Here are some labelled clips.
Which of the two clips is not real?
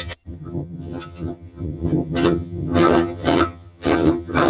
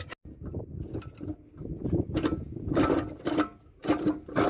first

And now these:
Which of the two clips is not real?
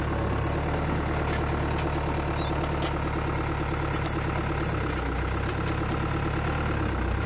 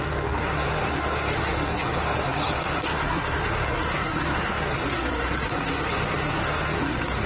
second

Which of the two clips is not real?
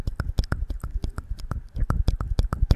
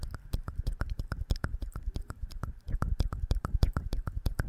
second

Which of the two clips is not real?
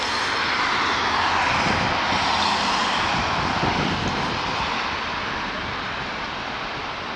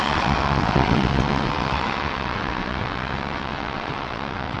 second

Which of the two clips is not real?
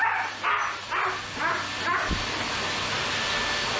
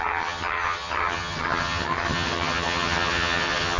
second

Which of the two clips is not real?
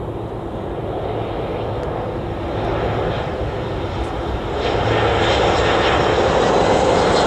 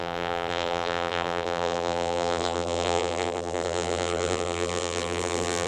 second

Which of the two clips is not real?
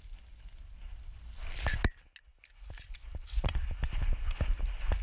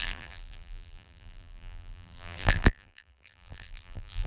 second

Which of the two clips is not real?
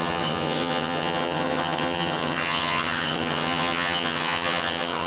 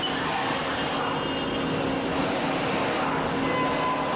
first